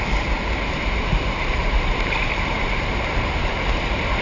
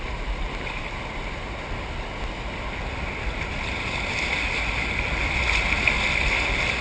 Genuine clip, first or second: second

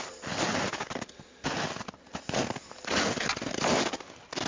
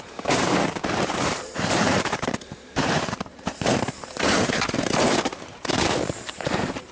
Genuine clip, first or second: first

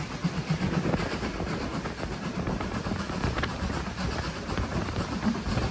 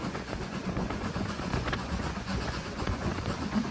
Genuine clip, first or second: first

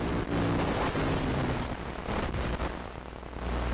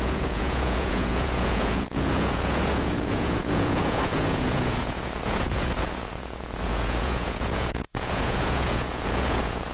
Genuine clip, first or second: first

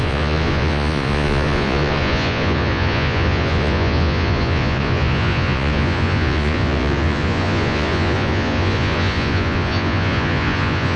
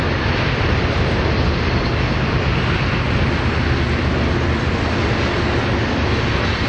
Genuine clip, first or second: second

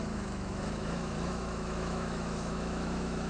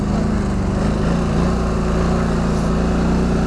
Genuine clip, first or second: second